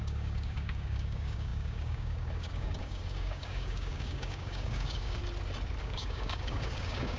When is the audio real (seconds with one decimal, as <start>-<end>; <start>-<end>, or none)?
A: 5.2-5.8